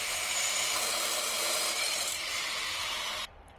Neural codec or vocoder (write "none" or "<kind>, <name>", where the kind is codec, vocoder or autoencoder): vocoder, BigVGAN v2